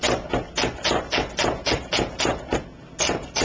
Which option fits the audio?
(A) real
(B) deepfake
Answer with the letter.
A